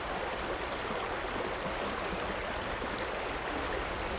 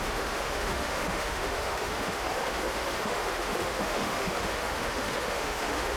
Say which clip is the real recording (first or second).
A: first